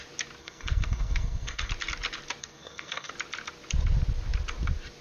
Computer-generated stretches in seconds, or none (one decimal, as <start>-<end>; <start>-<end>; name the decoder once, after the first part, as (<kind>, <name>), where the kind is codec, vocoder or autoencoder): 0.4-1.7 (codec, SNAC); 2.4-3.1